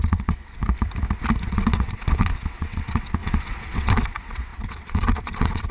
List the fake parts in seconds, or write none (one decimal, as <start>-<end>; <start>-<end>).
0.0-0.6; 1.4-5.7